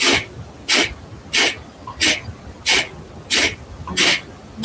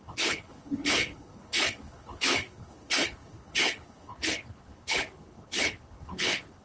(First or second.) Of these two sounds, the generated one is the second